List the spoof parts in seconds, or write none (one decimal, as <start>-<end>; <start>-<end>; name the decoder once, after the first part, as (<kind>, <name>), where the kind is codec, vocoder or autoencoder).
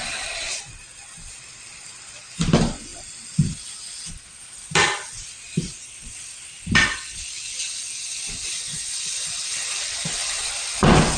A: none